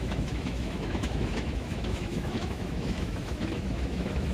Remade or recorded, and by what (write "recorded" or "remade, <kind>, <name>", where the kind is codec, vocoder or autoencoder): remade, autoencoder, DAC-VAE